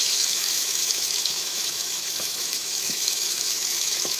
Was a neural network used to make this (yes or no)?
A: yes